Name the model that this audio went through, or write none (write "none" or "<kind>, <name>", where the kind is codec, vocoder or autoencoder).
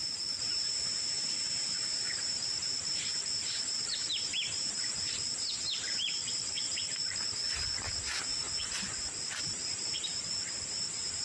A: vocoder, BigVGAN v2